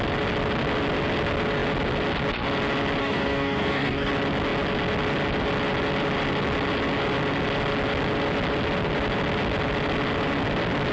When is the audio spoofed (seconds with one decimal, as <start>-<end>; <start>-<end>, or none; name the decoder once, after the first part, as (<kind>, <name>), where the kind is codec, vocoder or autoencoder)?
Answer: 3.0-4.1 (codec, DAC)